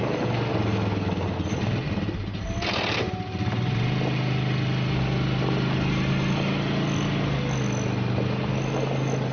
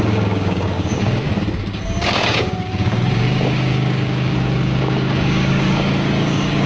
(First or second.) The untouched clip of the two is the first